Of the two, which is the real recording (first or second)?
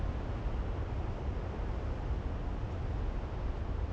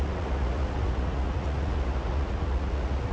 first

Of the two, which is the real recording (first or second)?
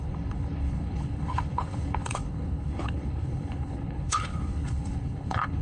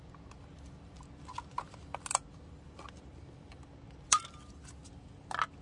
second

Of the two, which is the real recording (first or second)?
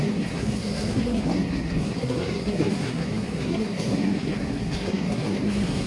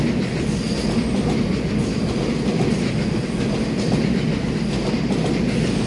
second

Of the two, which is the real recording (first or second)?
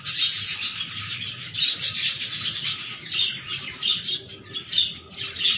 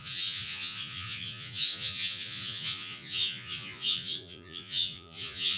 first